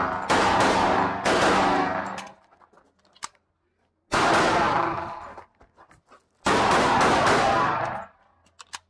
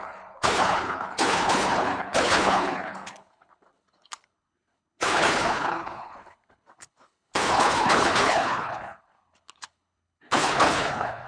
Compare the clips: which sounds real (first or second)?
first